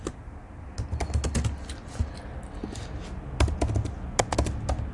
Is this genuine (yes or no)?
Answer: yes